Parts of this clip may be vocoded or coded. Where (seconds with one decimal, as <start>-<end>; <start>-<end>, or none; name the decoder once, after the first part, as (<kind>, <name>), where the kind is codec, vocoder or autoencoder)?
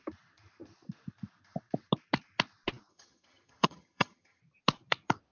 2.9-4.4 (vocoder, HiFi-GAN)